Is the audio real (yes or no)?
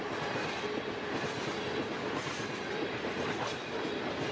yes